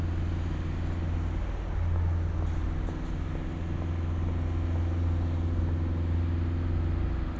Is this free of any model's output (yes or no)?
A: yes